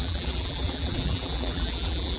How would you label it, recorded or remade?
remade